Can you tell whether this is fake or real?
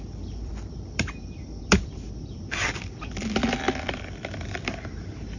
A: fake